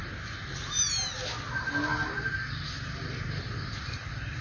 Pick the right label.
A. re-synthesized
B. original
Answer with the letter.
B